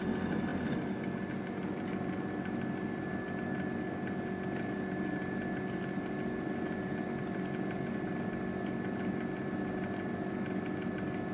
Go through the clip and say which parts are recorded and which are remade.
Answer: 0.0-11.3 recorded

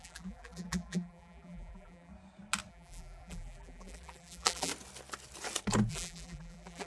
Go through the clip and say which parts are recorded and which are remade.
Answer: 0.0-2.1 remade; 2.1-2.7 recorded; 2.7-4.7 remade; 4.7-5.9 recorded; 5.9-6.9 remade

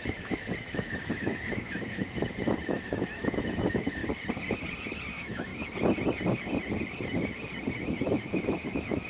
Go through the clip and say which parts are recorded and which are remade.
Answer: 0.0-4.0 remade; 4.0-5.1 recorded; 5.1-5.5 remade; 5.5-7.9 recorded; 7.9-9.1 remade

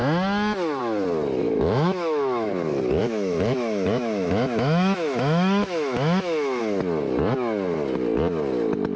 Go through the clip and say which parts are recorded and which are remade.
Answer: 0.0-1.4 recorded; 1.4-2.5 remade; 2.5-3.0 recorded; 3.0-6.6 remade; 6.6-9.0 recorded

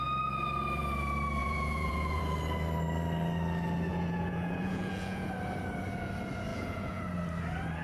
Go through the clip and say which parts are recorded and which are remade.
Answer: 0.0-1.4 recorded; 1.4-2.2 remade; 2.2-3.9 recorded; 3.9-5.3 remade; 5.3-6.5 recorded; 6.5-7.0 remade; 7.0-7.8 recorded

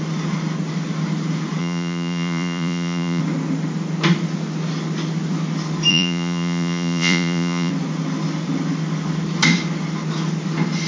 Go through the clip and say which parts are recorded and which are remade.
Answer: 0.0-1.6 recorded; 1.6-3.2 remade; 3.2-5.9 recorded; 5.9-7.7 remade; 7.7-10.9 recorded